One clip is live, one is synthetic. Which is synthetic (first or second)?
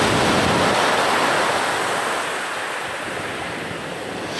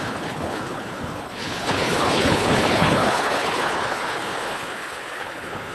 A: second